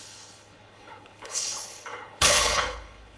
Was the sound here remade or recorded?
remade